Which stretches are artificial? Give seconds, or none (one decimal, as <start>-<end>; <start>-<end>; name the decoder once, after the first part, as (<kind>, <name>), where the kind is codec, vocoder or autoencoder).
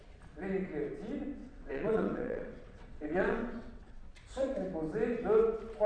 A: 1.4-4.0 (vocoder, WaveNeXt)